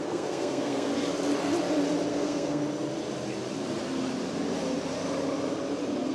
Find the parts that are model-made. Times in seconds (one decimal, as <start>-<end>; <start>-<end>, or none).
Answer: 0.0-0.9; 2.1-2.6